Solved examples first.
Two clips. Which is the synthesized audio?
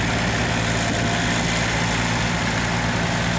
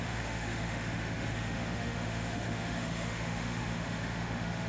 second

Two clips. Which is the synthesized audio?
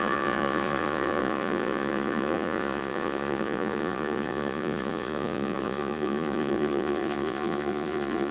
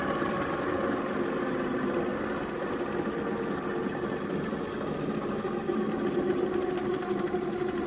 first